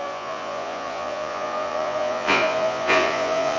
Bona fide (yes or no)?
no